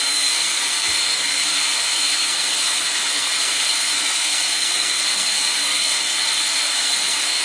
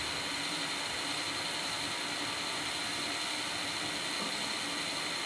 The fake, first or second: first